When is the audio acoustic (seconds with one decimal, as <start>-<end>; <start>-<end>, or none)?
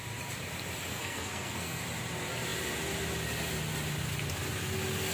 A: 0.0-0.9; 1.8-5.1